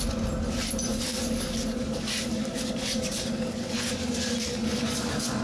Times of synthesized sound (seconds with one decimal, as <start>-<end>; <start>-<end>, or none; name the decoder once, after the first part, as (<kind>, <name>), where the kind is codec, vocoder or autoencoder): 0.9-4.1 (codec, DAC); 4.5-5.4